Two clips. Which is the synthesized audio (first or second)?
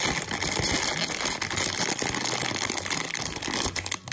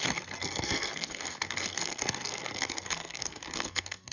second